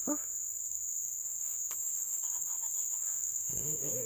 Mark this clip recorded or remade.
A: remade